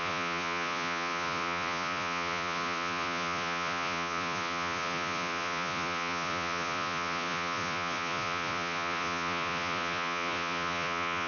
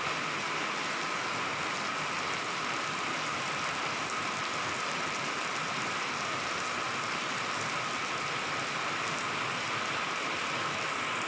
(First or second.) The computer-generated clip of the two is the first